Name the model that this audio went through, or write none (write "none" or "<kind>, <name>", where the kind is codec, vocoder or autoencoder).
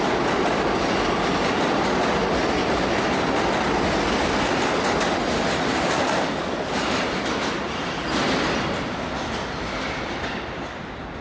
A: none